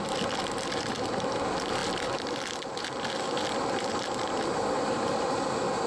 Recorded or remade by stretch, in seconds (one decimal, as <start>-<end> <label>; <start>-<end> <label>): 0.0-5.9 remade